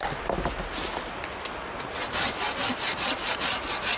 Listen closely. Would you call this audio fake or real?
real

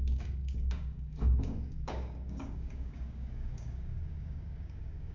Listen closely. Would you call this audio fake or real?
fake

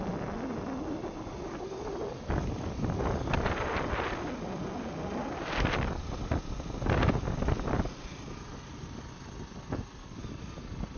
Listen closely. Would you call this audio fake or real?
real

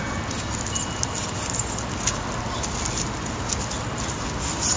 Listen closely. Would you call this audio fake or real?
real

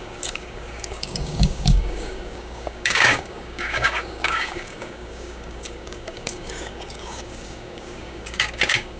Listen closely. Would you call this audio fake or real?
fake